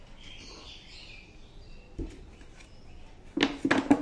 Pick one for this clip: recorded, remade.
recorded